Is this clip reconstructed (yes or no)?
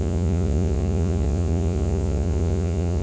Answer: yes